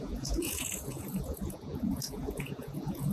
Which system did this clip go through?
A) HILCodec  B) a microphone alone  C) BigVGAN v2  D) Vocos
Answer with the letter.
D